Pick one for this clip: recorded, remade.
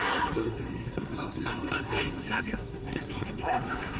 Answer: remade